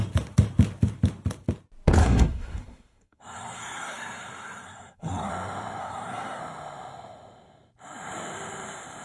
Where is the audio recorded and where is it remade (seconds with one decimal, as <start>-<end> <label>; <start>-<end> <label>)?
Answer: 0.0-2.0 recorded; 2.0-5.3 remade; 5.3-5.8 recorded; 5.8-6.4 remade; 6.4-9.0 recorded